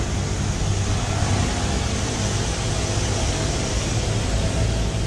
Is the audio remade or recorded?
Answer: recorded